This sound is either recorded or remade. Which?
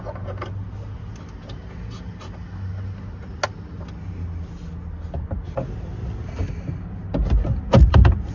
recorded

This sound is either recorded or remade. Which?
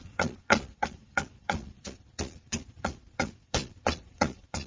remade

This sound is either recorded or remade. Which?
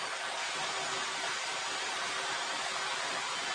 recorded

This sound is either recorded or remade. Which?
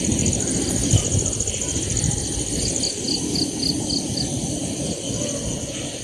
recorded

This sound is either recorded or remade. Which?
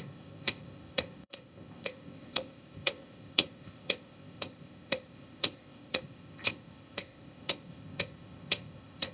remade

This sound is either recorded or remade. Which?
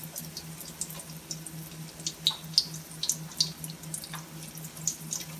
recorded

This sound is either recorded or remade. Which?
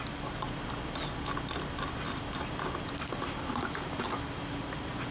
recorded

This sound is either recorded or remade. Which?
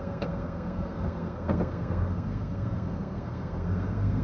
remade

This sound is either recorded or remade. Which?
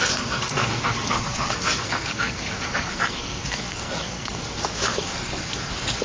remade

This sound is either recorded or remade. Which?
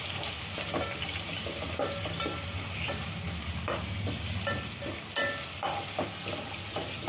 recorded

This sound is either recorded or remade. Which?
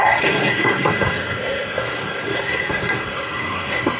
remade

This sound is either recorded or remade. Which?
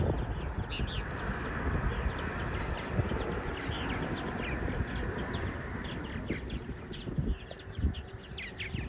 recorded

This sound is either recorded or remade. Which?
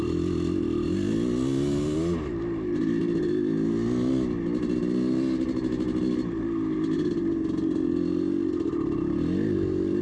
recorded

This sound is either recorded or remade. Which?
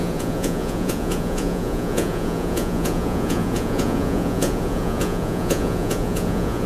remade